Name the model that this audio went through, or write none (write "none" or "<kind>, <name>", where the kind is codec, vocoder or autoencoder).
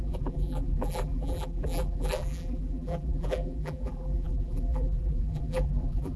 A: vocoder, BigVGAN v2